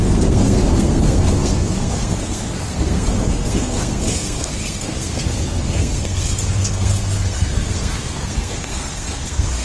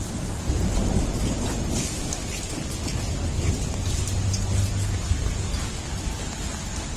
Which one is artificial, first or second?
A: first